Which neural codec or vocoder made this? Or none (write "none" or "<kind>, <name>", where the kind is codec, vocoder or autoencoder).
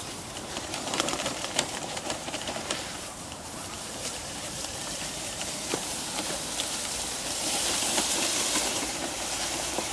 vocoder, BigVGAN v2